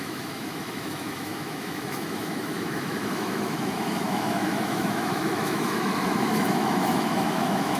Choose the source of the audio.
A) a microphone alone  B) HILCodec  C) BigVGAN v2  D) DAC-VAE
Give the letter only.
D